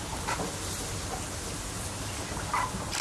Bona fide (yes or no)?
yes